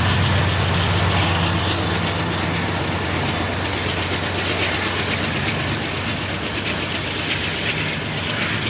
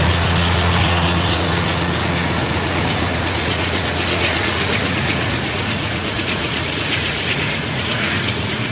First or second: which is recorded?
first